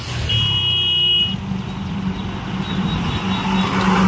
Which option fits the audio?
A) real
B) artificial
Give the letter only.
A